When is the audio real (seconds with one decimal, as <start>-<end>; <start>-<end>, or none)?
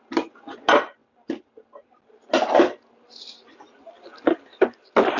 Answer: 0.0-5.2